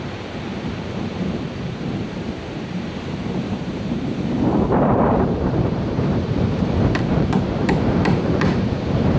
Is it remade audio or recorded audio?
remade